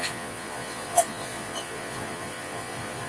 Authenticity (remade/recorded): remade